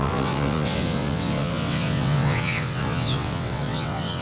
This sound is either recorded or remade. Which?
remade